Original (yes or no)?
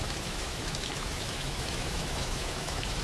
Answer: no